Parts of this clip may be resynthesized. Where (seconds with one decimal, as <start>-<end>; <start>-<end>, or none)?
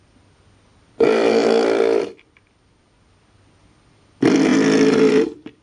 none